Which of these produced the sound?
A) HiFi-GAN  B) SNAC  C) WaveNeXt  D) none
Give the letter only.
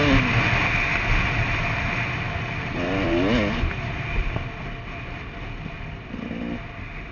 D